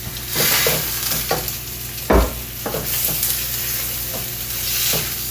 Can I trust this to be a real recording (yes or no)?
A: yes